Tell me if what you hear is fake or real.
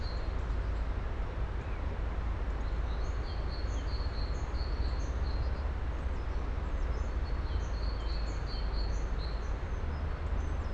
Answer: real